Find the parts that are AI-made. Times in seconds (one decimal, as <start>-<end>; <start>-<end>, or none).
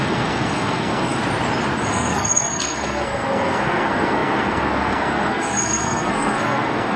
0.0-1.2; 1.9-7.0